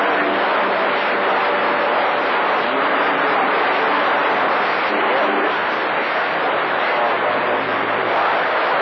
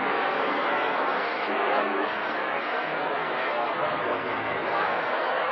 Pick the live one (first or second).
first